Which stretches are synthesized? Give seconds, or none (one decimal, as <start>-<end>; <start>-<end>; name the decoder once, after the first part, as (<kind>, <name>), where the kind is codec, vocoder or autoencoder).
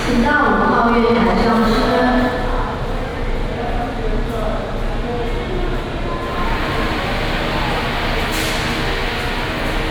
3.1-3.8 (vocoder, BigVGAN v2); 6.3-7.1